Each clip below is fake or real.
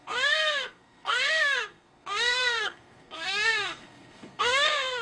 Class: fake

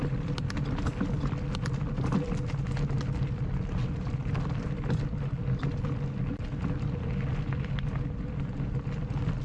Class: real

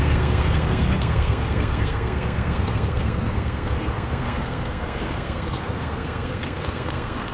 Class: fake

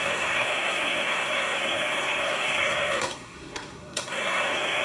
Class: fake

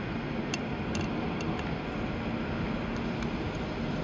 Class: real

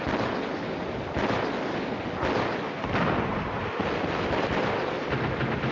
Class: real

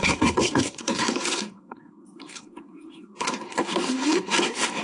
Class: fake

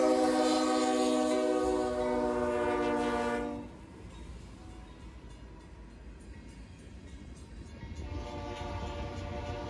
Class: real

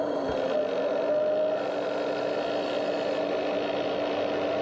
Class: real